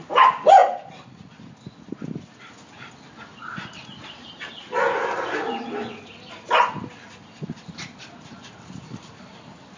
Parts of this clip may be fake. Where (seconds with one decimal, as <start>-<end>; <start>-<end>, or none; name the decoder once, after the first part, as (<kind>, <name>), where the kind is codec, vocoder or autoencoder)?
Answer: none